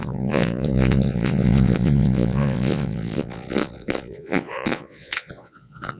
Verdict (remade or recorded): remade